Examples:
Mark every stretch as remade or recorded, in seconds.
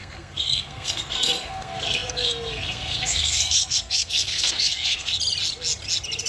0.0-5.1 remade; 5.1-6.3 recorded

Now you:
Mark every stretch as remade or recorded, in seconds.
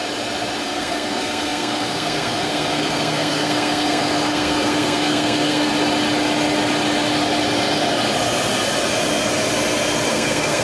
0.0-0.6 recorded; 0.6-5.7 remade; 5.7-10.1 recorded; 10.1-10.6 remade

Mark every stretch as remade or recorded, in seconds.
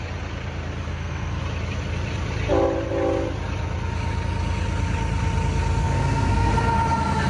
0.0-0.9 recorded; 0.9-1.4 remade; 1.4-5.8 recorded; 5.8-6.5 remade; 6.5-7.3 recorded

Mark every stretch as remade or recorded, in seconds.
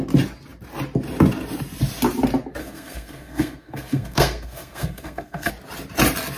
0.0-2.6 recorded; 2.6-5.5 remade; 5.5-6.4 recorded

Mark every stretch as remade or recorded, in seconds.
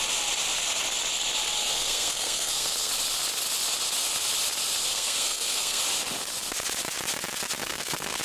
0.0-1.6 recorded; 1.6-2.9 remade; 2.9-4.9 recorded; 4.9-5.8 remade; 5.8-7.6 recorded; 7.6-8.2 remade